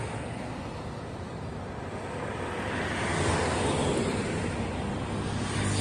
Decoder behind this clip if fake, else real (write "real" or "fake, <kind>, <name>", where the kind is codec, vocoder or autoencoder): real